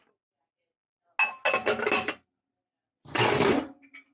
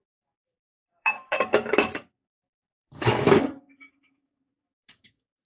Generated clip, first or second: second